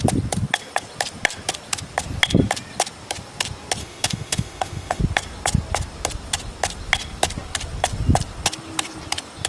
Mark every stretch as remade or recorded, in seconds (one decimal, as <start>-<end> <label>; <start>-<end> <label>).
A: 0.0-3.8 recorded; 3.8-5.0 remade; 5.0-9.5 recorded